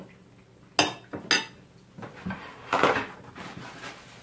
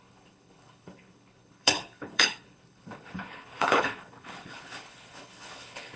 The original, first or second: first